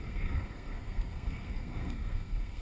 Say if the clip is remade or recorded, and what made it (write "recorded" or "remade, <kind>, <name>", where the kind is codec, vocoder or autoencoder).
remade, codec, SNAC